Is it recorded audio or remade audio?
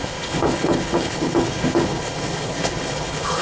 remade